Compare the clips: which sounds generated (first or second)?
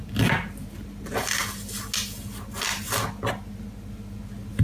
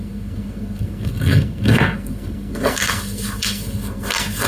second